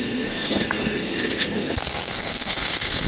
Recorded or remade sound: remade